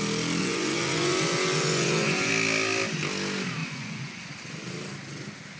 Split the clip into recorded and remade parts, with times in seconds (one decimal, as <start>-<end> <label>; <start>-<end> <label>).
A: 0.0-0.4 recorded; 0.4-2.3 remade; 2.3-3.6 recorded; 3.6-4.3 remade; 4.3-5.6 recorded